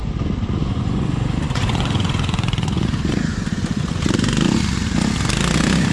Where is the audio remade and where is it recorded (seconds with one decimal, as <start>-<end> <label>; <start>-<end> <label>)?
0.0-0.6 recorded; 0.6-4.1 remade; 4.1-5.9 recorded